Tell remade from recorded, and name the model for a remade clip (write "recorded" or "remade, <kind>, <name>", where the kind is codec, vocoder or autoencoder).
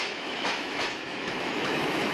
remade, autoencoder, DAC-VAE